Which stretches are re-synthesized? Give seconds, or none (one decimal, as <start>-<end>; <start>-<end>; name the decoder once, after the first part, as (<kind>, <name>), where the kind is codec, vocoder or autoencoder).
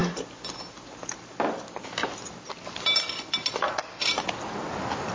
none